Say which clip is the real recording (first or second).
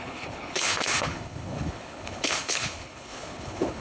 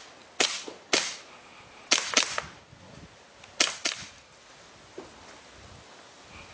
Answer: second